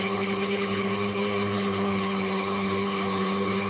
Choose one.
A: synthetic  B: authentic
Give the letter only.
A